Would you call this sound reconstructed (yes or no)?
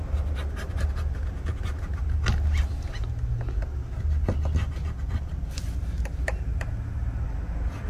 no